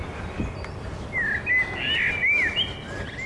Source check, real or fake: real